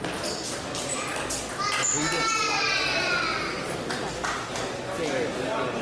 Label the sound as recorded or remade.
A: recorded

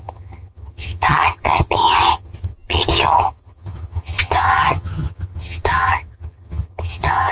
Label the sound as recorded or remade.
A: remade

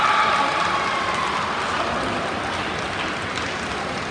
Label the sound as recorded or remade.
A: recorded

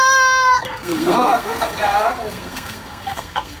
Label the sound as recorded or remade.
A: remade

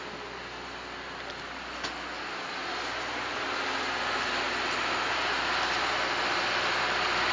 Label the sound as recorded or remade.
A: recorded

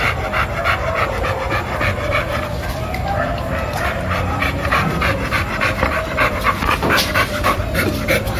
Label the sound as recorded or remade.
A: remade